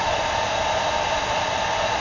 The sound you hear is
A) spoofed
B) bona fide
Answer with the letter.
B